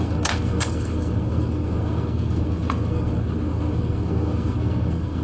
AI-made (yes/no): yes